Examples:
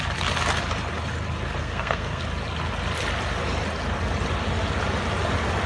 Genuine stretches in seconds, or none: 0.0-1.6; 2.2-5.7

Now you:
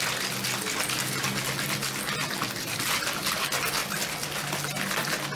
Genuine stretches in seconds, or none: 0.0-5.4

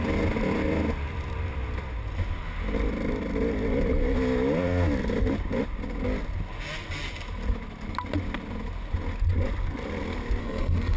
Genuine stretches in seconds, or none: 0.0-10.4

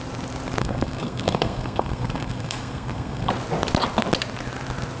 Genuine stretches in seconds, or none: 0.0-0.6; 3.3-5.0

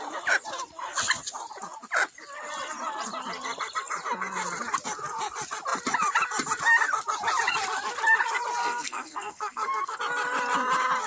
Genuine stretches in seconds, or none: 0.0-8.6; 10.0-11.1

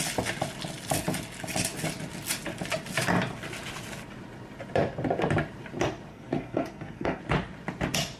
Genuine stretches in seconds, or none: 0.0-6.1; 7.2-8.2

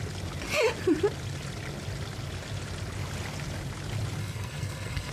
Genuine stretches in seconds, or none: 0.0-4.2

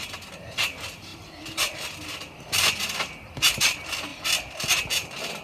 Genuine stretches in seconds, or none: 0.0-5.4